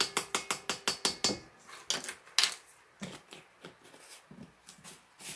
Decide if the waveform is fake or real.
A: real